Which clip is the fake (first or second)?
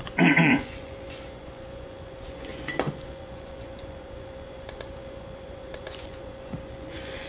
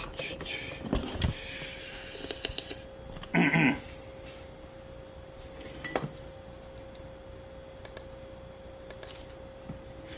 first